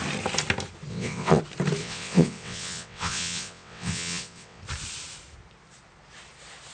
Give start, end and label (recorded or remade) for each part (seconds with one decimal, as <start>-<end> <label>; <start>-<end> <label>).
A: 0.0-0.9 recorded; 0.9-1.4 remade; 1.4-1.8 recorded; 1.8-4.6 remade; 4.6-6.7 recorded